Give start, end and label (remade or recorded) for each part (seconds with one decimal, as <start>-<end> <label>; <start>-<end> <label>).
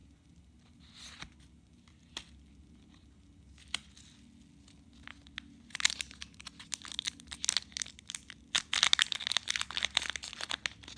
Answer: 0.0-11.0 recorded